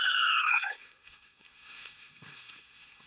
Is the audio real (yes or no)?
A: no